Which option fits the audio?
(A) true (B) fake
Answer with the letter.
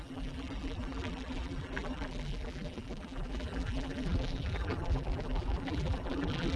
B